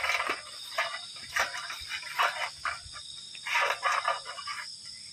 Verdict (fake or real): fake